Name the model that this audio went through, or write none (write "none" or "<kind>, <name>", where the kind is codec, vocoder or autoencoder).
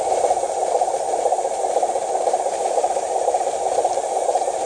vocoder, BigVGAN v2